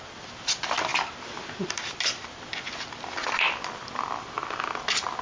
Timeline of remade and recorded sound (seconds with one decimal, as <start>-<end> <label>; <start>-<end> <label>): 0.0-5.2 recorded